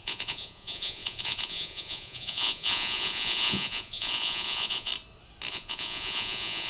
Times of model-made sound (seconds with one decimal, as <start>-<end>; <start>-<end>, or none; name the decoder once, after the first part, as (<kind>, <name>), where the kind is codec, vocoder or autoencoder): 0.0-4.9 (vocoder, Vocos); 5.5-6.7